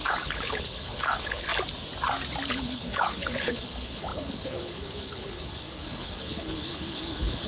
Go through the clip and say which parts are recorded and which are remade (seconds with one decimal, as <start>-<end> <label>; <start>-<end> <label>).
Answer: 0.0-1.5 remade; 1.5-2.5 recorded; 2.5-7.5 remade